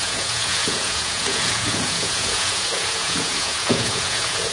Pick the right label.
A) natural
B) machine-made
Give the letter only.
B